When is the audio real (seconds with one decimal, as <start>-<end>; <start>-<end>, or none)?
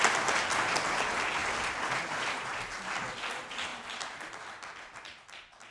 0.0-5.7